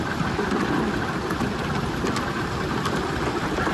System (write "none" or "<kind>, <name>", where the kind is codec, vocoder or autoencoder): none